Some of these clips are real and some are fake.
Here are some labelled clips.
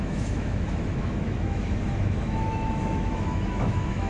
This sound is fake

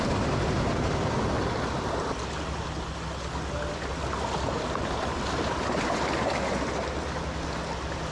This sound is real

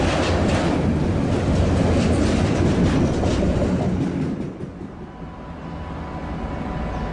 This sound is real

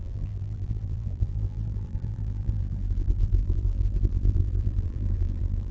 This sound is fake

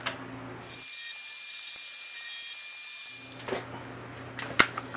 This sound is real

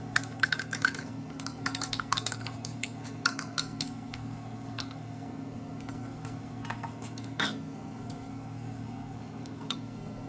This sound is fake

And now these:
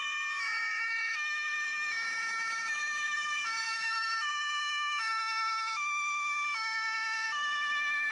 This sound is fake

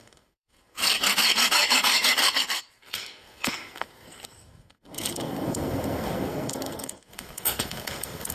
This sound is fake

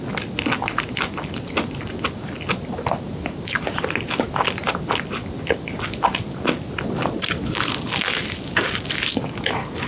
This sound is real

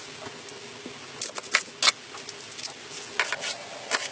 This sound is real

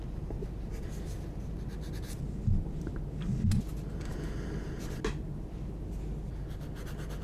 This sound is real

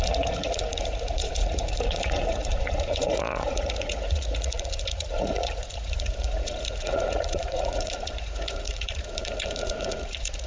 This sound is fake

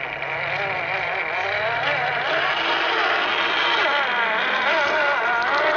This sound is real